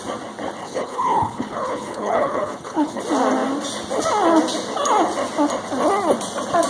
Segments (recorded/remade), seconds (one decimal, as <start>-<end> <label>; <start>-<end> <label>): 0.0-0.6 recorded; 0.6-3.0 remade; 3.0-6.7 recorded